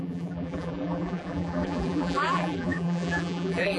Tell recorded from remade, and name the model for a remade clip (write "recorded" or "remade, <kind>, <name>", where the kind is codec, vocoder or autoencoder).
remade, vocoder, BigVGAN v2